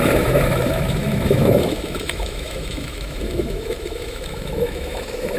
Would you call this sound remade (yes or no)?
yes